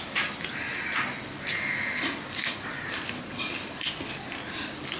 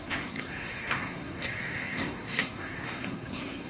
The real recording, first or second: first